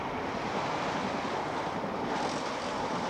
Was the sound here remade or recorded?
recorded